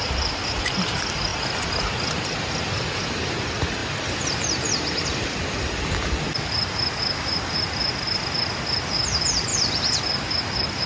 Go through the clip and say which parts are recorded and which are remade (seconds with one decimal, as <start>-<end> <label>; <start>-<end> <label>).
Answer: 0.0-1.3 recorded; 1.3-1.9 remade; 1.9-3.8 recorded; 3.8-6.1 remade; 6.1-9.5 recorded; 9.5-10.0 remade; 10.0-10.9 recorded